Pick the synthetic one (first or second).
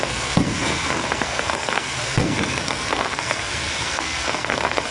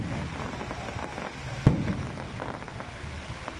first